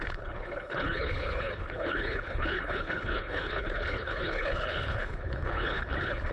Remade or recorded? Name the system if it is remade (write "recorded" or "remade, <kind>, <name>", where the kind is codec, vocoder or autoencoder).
remade, codec, HILCodec